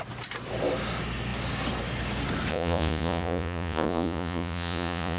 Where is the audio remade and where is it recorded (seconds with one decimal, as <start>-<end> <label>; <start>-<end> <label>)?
0.0-2.5 recorded; 2.5-5.2 remade